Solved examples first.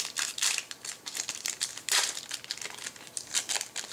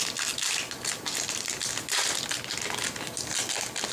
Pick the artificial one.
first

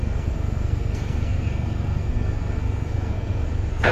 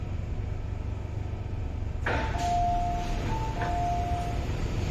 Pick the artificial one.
first